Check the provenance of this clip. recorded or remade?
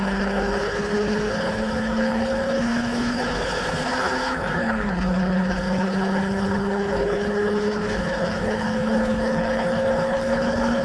remade